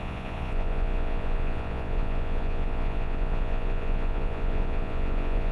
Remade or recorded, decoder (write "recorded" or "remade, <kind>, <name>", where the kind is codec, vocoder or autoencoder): remade, vocoder, Vocos